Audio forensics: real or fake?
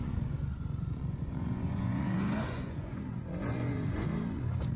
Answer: fake